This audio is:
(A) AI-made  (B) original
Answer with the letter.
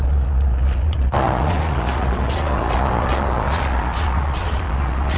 A